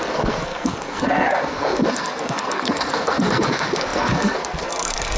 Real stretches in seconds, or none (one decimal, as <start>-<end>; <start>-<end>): none